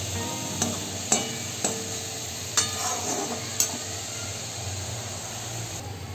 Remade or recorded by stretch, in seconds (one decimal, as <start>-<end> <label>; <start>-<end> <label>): 0.0-6.1 recorded